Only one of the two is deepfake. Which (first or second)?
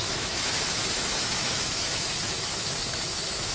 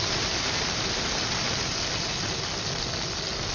first